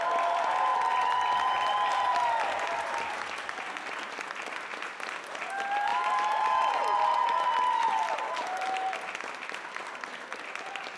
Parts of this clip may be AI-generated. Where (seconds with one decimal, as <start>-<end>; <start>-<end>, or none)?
none